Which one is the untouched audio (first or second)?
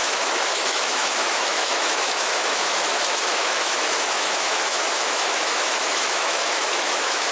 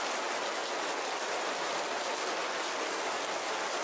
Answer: second